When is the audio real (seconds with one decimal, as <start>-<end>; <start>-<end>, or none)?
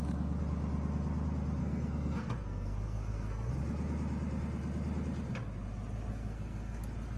0.0-1.6; 3.5-6.1; 6.8-7.2